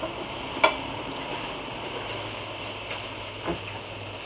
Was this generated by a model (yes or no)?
no